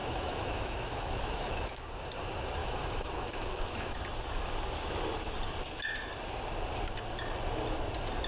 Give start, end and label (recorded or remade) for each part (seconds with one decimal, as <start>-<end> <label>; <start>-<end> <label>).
0.0-1.8 remade; 1.8-2.6 recorded; 2.6-4.0 remade; 4.0-8.3 recorded